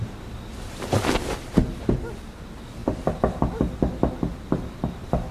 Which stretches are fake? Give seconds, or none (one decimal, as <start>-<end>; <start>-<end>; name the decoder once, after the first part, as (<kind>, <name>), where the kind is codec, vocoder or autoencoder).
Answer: 2.8-3.4 (vocoder, BigVGAN v2)